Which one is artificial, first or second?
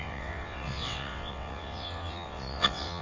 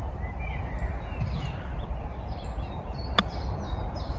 first